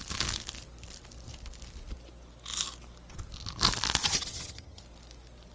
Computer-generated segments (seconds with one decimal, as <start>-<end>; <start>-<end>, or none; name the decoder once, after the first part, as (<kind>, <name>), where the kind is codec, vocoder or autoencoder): 4.0-4.8 (vocoder, HiFi-GAN)